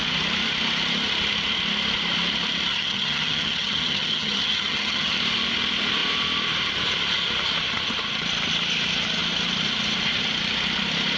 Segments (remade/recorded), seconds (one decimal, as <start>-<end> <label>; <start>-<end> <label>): 0.0-2.7 recorded; 2.7-5.2 remade; 5.2-11.2 recorded